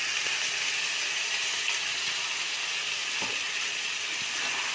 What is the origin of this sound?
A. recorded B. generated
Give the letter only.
A